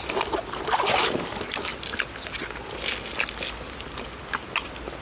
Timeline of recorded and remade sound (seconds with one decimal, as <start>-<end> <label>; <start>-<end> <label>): 0.0-5.0 recorded